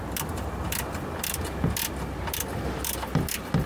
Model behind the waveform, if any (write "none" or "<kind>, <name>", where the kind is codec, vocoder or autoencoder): none